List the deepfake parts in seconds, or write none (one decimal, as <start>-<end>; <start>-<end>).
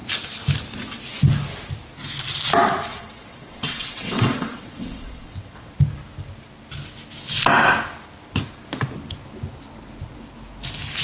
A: 2.9-5.7